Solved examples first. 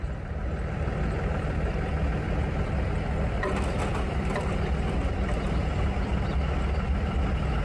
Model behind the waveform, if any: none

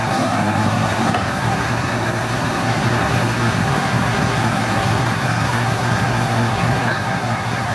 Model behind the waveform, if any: codec, SNAC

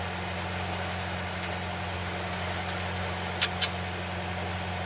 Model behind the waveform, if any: none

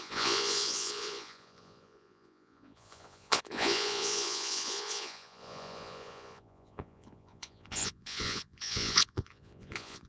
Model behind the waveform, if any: vocoder, Vocos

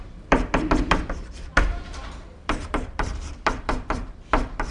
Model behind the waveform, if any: vocoder, BigVGAN v2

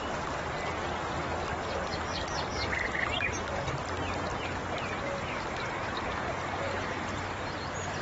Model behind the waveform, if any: none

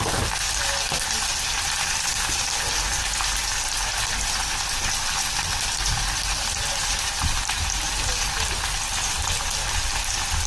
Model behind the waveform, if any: none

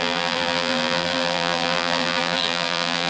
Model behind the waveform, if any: vocoder, BigVGAN v2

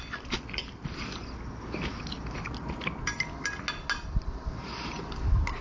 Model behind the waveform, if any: none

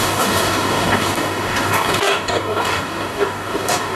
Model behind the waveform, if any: codec, DAC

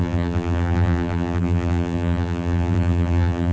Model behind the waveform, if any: vocoder, BigVGAN v2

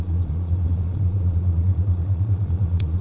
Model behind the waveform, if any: vocoder, Vocos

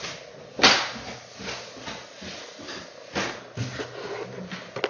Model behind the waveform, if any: none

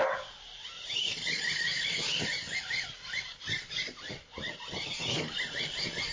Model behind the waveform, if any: none